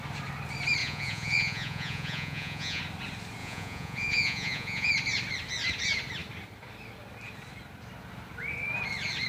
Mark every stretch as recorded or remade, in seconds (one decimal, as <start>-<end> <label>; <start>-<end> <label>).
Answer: 0.0-0.8 recorded; 0.8-2.8 remade; 2.8-3.4 recorded; 3.4-4.9 remade; 4.9-9.3 recorded